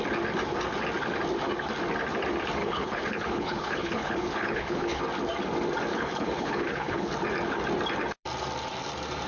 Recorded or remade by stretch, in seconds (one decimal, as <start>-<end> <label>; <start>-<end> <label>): 0.0-2.6 recorded; 2.6-5.0 remade; 5.0-5.9 recorded; 5.9-7.1 remade; 7.1-9.3 recorded